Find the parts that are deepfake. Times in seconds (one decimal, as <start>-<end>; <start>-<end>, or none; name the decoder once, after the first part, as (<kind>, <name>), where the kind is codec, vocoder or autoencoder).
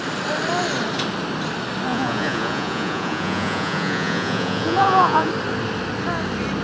1.9-5.3 (vocoder, Vocos)